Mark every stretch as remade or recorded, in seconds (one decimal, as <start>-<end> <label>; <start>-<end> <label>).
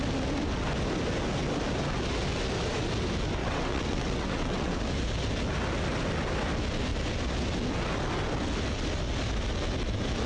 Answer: 0.0-3.4 recorded; 3.4-4.8 remade; 4.8-10.3 recorded